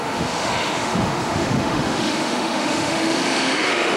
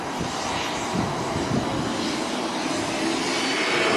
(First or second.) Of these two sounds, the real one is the second